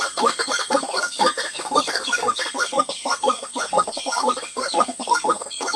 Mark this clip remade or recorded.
remade